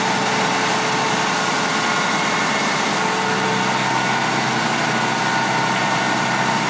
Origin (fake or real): real